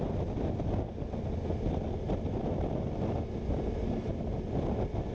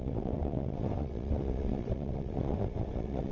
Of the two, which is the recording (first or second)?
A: first